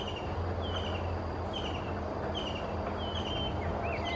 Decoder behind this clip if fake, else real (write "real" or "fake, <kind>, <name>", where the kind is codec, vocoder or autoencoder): real